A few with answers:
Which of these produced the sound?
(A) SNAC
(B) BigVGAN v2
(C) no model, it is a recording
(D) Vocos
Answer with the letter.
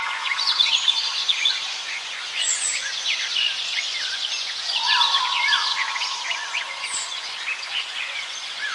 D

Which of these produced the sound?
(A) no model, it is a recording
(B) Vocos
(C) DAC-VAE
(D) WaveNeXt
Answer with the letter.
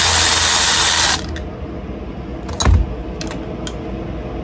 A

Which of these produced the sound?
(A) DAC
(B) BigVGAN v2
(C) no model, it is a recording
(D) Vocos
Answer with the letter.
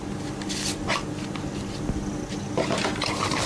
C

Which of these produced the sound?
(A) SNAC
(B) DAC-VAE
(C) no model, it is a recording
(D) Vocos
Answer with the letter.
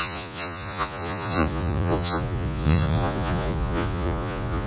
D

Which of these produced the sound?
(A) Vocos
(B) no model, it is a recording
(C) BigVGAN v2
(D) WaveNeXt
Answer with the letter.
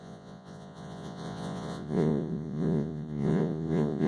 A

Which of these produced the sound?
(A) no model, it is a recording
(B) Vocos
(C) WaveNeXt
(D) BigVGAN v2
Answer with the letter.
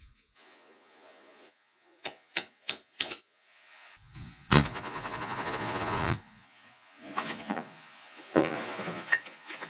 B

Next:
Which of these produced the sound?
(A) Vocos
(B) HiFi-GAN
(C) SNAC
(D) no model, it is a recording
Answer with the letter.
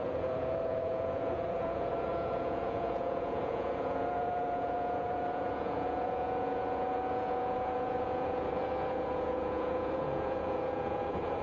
A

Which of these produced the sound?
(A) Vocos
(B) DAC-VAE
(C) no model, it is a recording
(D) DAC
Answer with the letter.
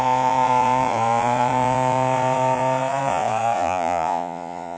A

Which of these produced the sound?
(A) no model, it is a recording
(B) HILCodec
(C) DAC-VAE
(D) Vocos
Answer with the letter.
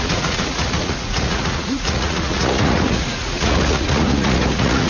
D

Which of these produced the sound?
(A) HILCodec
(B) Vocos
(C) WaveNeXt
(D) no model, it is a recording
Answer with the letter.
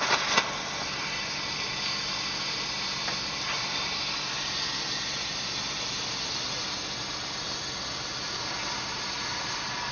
D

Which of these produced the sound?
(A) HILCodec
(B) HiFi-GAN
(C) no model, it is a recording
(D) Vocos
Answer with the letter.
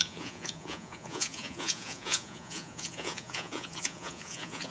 D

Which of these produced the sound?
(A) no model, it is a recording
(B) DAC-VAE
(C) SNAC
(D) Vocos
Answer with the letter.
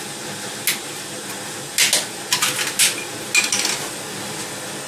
A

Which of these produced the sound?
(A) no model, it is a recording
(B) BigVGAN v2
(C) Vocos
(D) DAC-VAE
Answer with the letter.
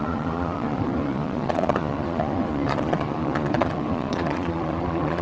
C